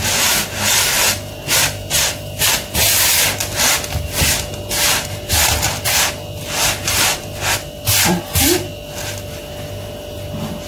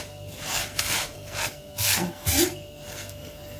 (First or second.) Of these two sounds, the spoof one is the second